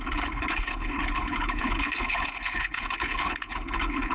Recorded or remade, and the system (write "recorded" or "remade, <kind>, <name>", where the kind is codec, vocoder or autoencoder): remade, codec, HILCodec